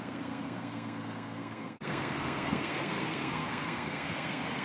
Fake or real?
fake